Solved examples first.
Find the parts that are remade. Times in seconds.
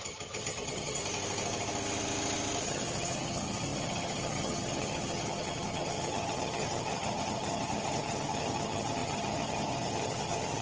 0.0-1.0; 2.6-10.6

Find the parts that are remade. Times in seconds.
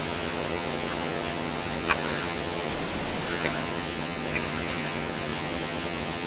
0.0-2.7; 3.3-6.3